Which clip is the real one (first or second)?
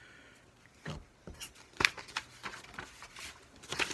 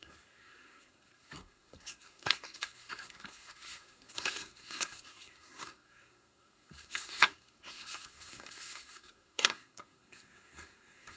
first